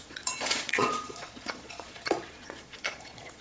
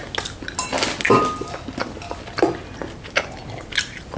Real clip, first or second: second